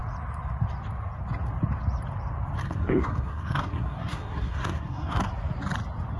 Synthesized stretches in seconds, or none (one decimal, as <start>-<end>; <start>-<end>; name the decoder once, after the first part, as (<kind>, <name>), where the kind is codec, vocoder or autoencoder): 2.6-5.3 (codec, SNAC)